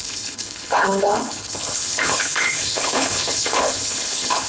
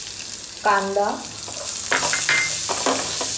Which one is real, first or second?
second